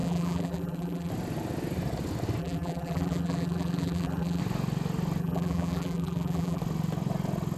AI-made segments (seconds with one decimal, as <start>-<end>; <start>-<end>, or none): 0.0-1.1; 2.4-4.4; 5.2-6.6